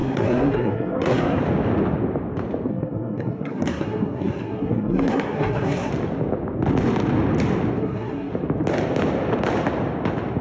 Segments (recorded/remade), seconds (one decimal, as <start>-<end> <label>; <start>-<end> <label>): 0.0-1.4 remade; 1.4-2.7 recorded; 2.7-5.9 remade; 5.9-7.8 recorded; 7.8-8.3 remade; 8.3-10.4 recorded